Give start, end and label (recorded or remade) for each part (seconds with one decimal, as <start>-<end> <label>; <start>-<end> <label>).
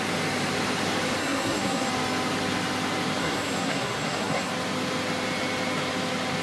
0.0-1.2 recorded; 1.2-1.9 remade; 1.9-3.2 recorded; 3.2-4.5 remade; 4.5-6.4 recorded